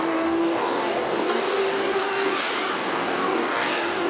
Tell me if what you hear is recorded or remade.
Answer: remade